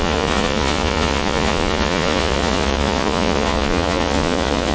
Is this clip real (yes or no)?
no